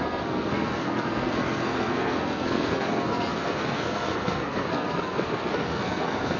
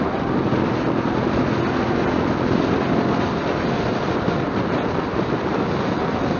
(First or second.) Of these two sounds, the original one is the second